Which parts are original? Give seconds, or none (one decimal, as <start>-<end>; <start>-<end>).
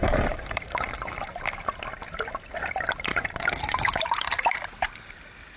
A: 1.4-3.1; 4.6-5.6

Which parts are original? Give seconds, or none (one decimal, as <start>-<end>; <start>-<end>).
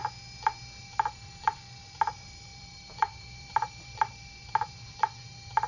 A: 0.0-0.8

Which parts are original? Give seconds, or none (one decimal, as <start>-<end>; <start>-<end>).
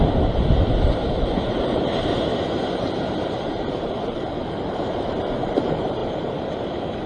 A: none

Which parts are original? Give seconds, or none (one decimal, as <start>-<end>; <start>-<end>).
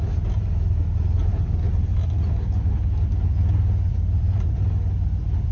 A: 0.0-3.9; 4.7-5.5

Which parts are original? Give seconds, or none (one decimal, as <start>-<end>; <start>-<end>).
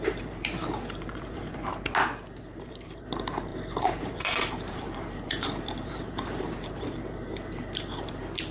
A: 1.7-2.4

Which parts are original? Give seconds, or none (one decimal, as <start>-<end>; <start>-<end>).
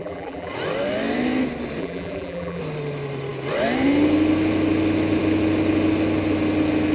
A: 0.5-1.8; 2.6-6.9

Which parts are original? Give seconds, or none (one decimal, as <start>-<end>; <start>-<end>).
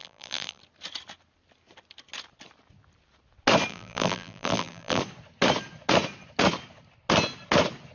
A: 0.6-3.7; 5.0-7.9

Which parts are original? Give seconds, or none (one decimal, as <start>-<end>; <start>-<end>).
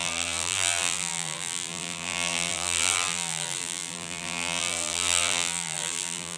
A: none